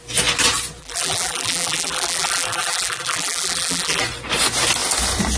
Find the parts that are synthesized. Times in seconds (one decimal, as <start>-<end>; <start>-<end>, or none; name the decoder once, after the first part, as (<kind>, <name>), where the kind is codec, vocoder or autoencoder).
0.8-4.0 (vocoder, BigVGAN v2)